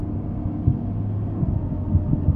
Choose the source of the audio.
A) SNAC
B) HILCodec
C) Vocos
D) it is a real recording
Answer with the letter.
D